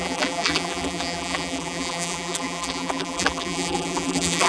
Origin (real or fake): fake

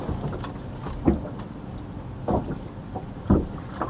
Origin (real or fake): real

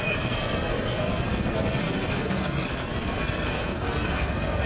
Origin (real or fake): fake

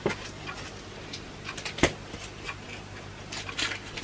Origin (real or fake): real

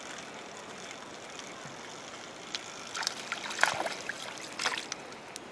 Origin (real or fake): real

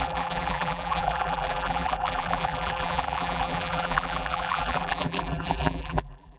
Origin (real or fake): fake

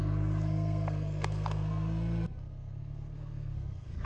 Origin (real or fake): fake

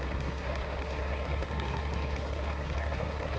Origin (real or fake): fake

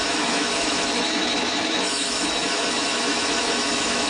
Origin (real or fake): fake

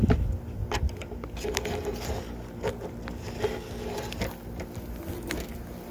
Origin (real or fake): real